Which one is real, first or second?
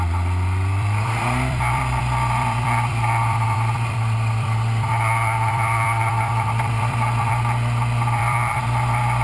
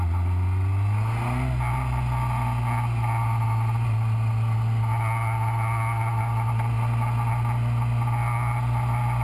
second